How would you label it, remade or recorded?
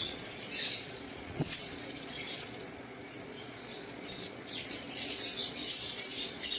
remade